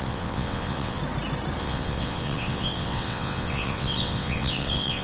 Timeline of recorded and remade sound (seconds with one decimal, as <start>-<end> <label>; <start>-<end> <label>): 0.0-1.0 remade; 1.0-1.6 recorded; 1.6-5.0 remade